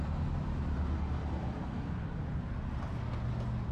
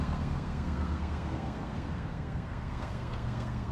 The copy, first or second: second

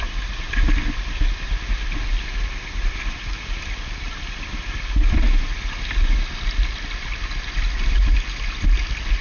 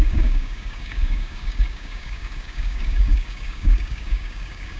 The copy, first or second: second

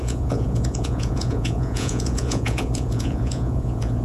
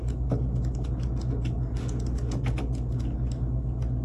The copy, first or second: first